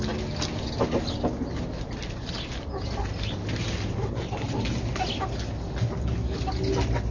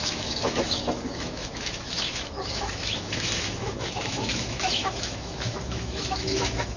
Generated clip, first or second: second